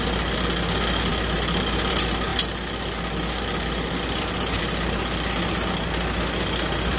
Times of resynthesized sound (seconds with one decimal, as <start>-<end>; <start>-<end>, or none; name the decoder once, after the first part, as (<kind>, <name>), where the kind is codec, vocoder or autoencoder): none